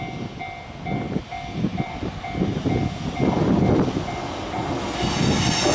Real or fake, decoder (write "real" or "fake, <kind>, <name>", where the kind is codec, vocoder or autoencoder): real